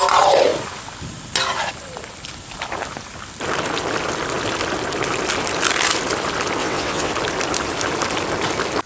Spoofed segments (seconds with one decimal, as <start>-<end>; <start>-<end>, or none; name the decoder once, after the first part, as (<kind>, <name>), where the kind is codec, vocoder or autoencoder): 6.6-7.1 (vocoder, WaveNeXt)